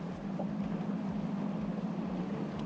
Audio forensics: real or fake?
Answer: real